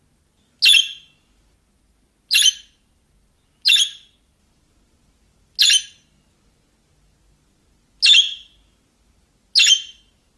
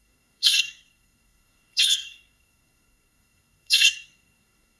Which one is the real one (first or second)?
first